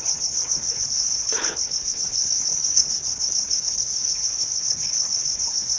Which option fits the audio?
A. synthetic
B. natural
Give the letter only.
A